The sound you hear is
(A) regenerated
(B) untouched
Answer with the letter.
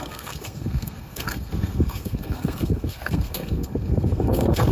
A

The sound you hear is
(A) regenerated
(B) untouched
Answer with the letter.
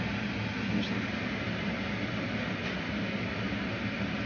B